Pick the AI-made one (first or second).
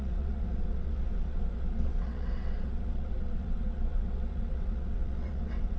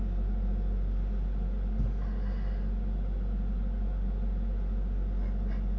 first